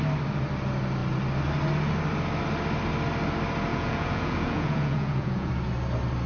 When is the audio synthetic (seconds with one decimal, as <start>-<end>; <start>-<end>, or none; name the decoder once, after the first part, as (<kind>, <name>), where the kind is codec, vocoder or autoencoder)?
3.7-5.5 (vocoder, Vocos)